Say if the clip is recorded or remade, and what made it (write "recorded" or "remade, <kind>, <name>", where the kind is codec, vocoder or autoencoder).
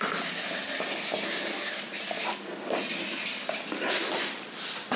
recorded